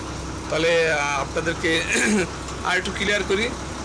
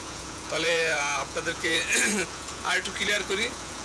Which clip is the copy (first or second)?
second